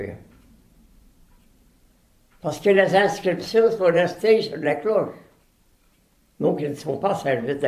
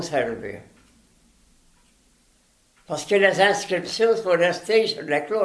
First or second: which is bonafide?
second